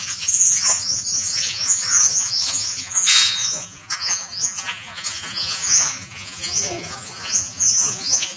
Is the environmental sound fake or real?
fake